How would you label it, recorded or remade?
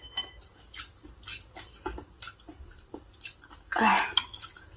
recorded